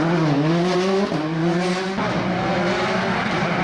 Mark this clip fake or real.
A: real